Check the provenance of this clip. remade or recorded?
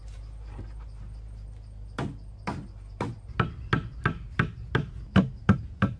recorded